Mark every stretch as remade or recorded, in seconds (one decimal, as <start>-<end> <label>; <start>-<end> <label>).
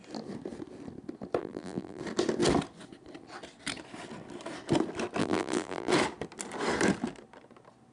0.0-1.4 recorded; 1.4-2.0 remade; 2.0-5.2 recorded; 5.2-5.9 remade; 5.9-7.9 recorded